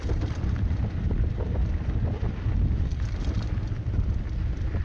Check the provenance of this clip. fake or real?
real